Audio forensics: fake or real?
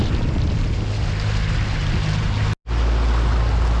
real